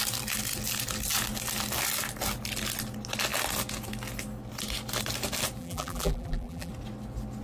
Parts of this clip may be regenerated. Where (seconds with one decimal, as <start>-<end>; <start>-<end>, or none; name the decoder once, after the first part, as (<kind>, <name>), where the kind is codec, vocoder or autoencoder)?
5.6-6.7 (vocoder, BigVGAN v2)